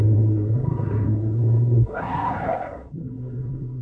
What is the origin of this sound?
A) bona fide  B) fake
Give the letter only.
B